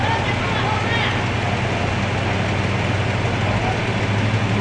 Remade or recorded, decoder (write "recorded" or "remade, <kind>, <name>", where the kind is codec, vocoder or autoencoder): recorded